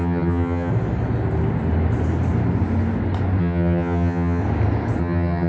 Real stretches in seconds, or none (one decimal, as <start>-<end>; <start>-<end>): 0.7-3.4; 4.4-5.0